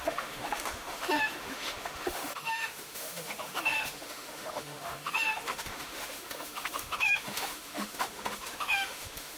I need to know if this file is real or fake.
fake